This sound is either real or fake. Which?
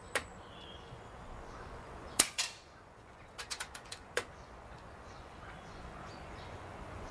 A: fake